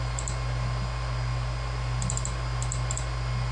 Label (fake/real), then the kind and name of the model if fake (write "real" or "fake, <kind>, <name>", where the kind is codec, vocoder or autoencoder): real